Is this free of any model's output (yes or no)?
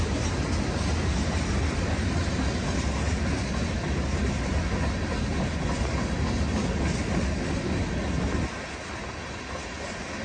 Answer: yes